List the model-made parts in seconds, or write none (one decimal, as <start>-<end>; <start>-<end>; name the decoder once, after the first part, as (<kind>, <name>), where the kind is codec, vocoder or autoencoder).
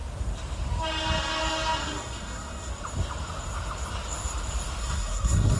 1.8-2.7 (codec, SNAC); 4.8-5.6